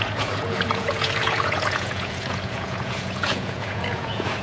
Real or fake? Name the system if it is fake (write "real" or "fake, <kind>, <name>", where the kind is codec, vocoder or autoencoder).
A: fake, vocoder, Vocos